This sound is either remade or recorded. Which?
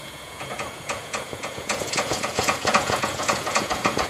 remade